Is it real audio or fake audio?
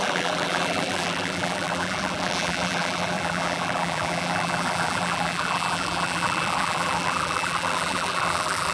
fake